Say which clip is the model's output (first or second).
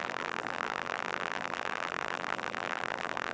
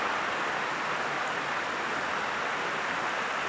first